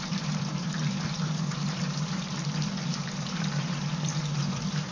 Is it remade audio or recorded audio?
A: remade